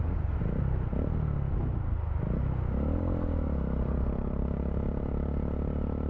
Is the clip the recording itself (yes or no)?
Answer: yes